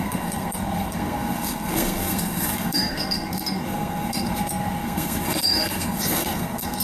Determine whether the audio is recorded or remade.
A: remade